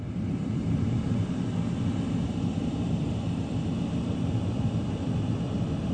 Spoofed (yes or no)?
yes